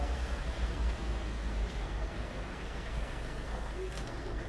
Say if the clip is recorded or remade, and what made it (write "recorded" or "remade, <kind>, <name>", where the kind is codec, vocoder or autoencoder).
remade, codec, SNAC